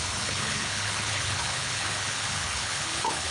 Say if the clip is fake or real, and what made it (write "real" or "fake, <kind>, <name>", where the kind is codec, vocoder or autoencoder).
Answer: fake, codec, HILCodec